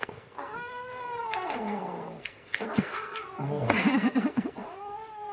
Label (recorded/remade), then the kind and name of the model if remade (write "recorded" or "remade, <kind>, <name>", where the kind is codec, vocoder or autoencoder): remade, codec, SNAC